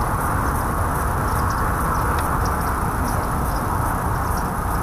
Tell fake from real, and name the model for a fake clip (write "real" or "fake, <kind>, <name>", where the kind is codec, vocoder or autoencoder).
real